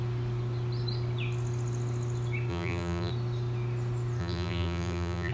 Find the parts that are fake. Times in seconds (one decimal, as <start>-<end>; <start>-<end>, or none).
2.5-3.1; 4.2-5.3